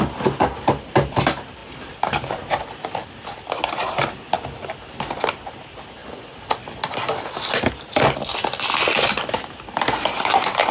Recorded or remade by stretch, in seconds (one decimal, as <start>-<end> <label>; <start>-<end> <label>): 0.0-10.7 recorded